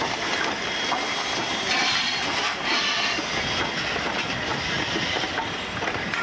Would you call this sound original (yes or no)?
yes